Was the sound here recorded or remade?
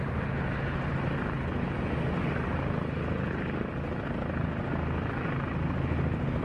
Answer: recorded